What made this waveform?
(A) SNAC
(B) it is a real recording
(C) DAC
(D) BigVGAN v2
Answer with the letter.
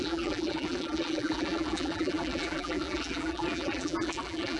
D